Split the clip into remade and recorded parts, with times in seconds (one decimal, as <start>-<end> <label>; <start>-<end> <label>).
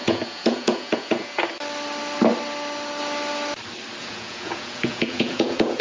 0.0-1.4 remade; 1.4-4.0 recorded; 4.0-5.8 remade